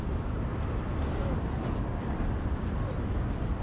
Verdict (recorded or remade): recorded